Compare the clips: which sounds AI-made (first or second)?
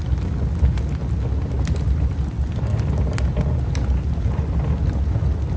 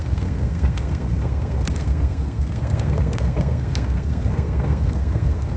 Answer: second